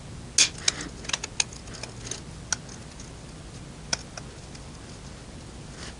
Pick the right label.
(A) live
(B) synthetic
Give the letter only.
A